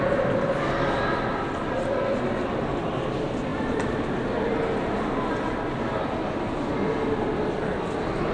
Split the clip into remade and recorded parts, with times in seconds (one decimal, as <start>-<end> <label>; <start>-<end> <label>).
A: 0.0-8.3 recorded